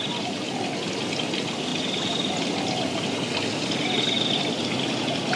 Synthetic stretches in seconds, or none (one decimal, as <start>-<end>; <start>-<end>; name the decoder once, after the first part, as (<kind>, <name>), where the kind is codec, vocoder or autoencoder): none